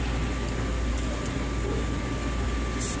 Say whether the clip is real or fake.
real